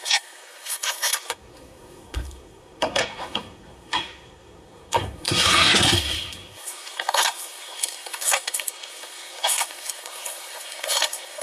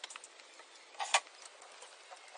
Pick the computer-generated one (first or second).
first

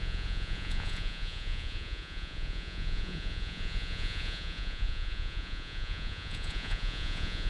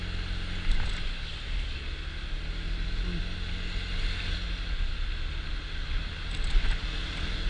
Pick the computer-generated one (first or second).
first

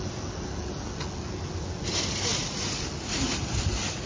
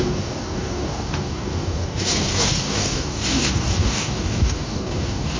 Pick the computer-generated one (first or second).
second